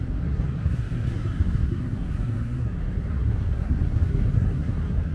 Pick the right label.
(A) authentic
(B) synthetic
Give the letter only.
B